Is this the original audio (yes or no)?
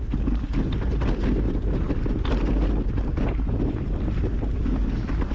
yes